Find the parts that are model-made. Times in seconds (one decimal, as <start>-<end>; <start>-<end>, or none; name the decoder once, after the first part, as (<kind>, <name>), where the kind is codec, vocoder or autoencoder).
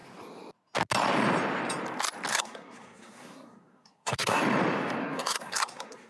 2.3-4.4 (codec, SNAC); 5.0-6.1